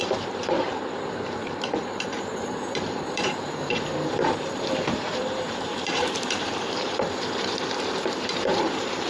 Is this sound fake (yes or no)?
yes